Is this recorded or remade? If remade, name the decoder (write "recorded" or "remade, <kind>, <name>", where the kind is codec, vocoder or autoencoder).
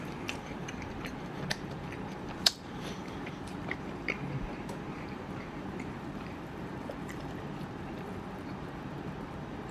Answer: remade, vocoder, BigVGAN v2